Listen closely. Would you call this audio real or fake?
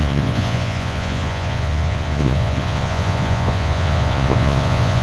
fake